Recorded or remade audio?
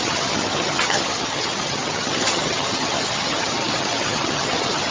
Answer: remade